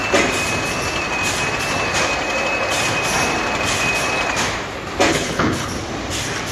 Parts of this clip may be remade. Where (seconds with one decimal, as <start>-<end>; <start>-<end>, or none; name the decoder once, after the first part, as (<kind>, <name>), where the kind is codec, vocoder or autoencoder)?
5.1-5.7 (codec, HILCodec)